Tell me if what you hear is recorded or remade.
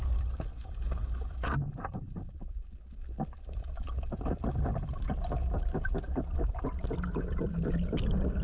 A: recorded